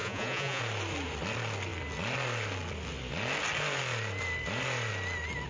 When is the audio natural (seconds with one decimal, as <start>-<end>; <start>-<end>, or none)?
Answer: 0.6-5.5